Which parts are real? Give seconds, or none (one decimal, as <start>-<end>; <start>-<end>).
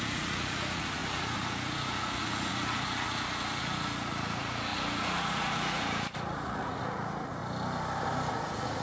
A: 7.4-8.3